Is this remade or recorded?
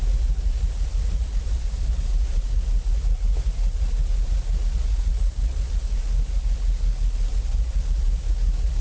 recorded